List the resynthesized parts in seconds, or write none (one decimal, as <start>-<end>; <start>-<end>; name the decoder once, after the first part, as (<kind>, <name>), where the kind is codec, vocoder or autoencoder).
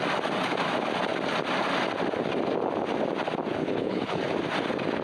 3.6-4.2 (codec, HILCodec)